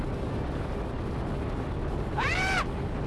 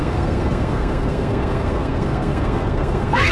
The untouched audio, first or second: first